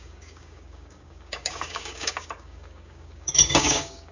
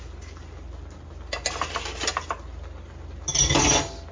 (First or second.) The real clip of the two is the second